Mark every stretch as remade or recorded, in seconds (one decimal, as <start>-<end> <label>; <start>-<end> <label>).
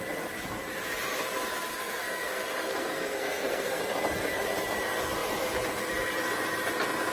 0.0-1.7 recorded; 1.7-3.8 remade; 3.8-7.1 recorded